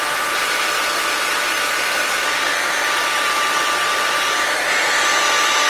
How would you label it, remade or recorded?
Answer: recorded